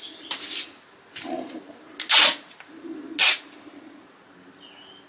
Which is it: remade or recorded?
recorded